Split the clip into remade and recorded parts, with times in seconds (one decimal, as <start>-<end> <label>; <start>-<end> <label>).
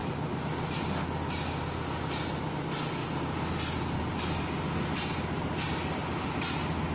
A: 0.0-0.8 remade; 0.8-3.0 recorded; 3.0-4.2 remade; 4.2-6.9 recorded